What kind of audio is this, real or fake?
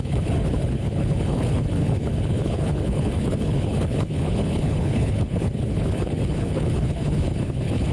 fake